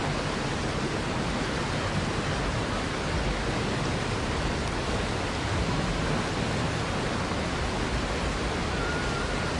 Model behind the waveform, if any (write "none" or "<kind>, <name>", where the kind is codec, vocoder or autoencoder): none